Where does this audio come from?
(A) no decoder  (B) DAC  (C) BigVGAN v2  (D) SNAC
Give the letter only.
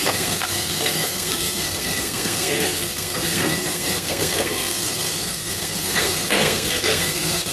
D